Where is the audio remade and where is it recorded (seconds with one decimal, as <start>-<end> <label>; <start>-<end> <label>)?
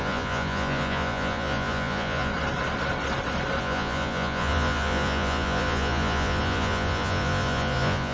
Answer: 0.0-2.3 remade; 2.3-3.6 recorded; 3.6-8.1 remade